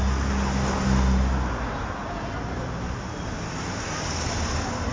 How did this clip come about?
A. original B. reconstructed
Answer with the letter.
A